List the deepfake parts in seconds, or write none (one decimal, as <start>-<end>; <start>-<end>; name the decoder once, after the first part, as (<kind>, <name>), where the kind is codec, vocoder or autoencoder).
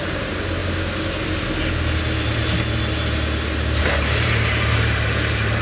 0.0-0.6 (vocoder, BigVGAN v2); 3.8-5.6